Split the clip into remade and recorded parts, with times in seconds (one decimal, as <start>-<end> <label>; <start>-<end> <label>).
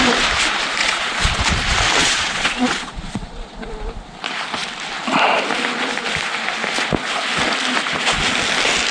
0.0-0.8 recorded; 0.8-1.4 remade; 1.4-2.0 recorded; 2.0-3.7 remade; 3.7-8.9 recorded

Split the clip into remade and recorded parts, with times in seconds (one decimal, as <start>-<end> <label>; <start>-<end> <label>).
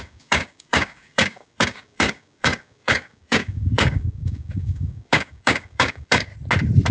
0.0-6.3 remade; 6.3-6.9 recorded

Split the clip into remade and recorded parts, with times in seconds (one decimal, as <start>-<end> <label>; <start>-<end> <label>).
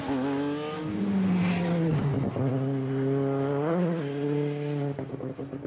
0.0-5.7 recorded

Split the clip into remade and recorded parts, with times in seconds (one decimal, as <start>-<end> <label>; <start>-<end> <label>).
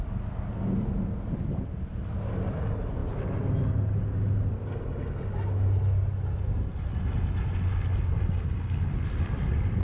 0.0-9.8 recorded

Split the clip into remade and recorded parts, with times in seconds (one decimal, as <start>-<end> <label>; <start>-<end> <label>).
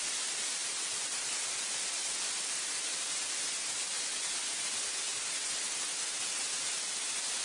0.0-7.4 recorded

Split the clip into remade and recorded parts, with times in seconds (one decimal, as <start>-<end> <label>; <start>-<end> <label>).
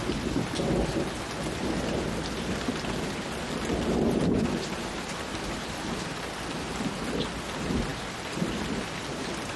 0.0-9.6 recorded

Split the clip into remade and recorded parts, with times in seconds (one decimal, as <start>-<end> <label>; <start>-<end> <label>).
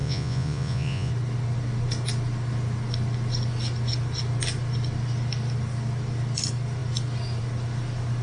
0.0-1.1 remade; 1.1-8.2 recorded